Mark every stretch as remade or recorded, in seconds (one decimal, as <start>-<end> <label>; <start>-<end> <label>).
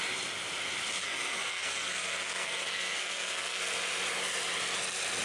0.0-1.0 recorded; 1.0-3.6 remade; 3.6-5.2 recorded